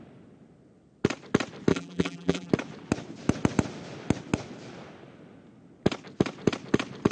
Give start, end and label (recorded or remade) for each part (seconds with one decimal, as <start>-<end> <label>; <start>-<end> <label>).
0.0-1.7 recorded; 1.7-2.5 remade; 2.5-7.1 recorded